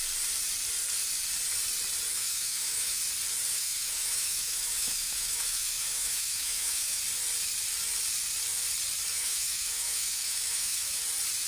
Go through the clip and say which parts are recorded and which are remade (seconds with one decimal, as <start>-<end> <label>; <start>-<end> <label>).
0.0-2.1 recorded; 2.1-3.0 remade; 3.0-3.5 recorded; 3.5-7.0 remade; 7.0-9.1 recorded; 9.1-11.0 remade; 11.0-11.5 recorded